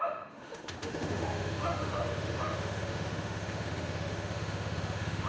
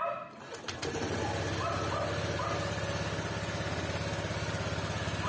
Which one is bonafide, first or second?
second